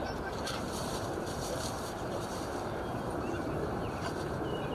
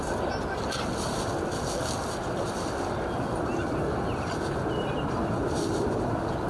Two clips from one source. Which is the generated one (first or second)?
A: first